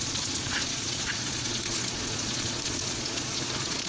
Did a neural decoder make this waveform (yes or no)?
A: yes